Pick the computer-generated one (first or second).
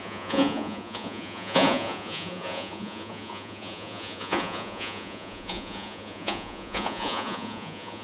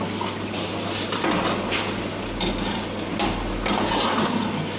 first